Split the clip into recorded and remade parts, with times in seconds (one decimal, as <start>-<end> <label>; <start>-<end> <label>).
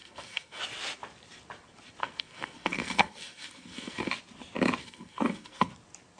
0.0-0.6 remade; 0.6-2.0 recorded; 2.0-4.1 remade; 4.1-4.8 recorded; 4.8-5.7 remade; 5.7-6.2 recorded